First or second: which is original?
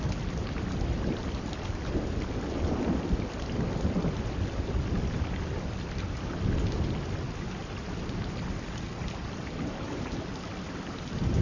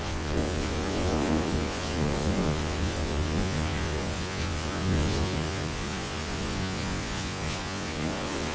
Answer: first